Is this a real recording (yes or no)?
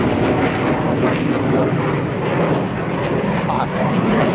yes